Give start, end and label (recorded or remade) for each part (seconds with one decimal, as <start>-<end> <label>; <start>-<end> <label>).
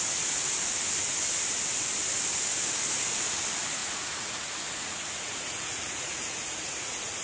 0.0-3.8 recorded; 3.8-7.2 remade